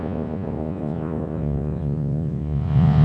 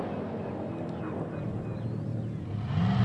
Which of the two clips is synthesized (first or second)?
first